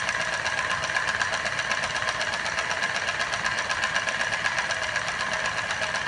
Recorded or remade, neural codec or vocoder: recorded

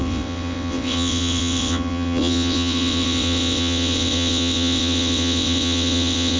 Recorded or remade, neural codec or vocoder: remade, vocoder, WaveNeXt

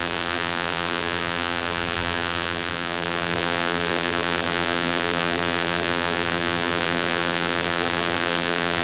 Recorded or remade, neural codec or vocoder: remade, vocoder, BigVGAN v2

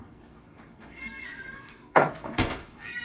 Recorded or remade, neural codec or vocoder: remade, codec, SNAC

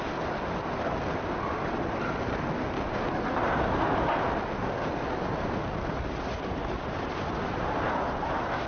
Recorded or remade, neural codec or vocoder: recorded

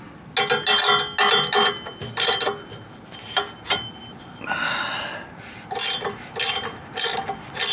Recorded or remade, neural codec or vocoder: recorded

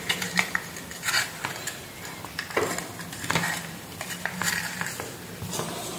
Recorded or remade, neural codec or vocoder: recorded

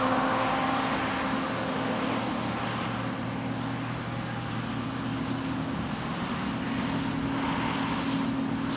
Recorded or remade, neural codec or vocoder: recorded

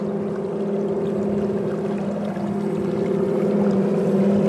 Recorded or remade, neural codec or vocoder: recorded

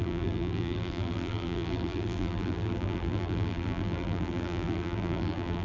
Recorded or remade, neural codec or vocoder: remade, vocoder, BigVGAN v2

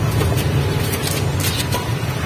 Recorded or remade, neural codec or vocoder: recorded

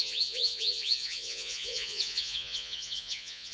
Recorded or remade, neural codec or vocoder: remade, vocoder, Vocos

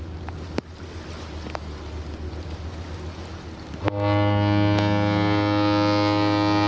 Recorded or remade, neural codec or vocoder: recorded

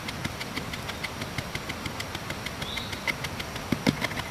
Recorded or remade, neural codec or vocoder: recorded